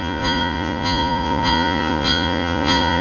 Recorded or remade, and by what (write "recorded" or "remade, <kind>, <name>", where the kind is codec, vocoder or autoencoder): remade, vocoder, Vocos